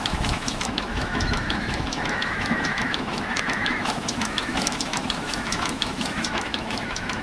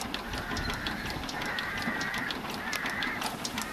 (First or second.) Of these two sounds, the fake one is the first